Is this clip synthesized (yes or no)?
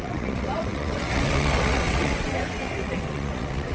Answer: yes